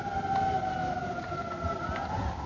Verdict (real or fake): real